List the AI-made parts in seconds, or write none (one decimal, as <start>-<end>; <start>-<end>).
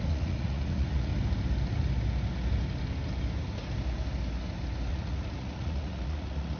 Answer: 0.0-1.1; 4.9-6.6